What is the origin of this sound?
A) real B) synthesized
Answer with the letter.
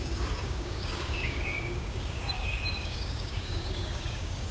B